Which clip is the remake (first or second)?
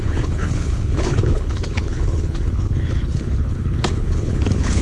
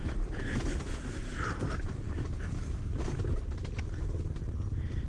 first